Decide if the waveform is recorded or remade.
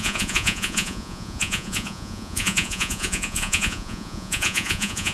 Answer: remade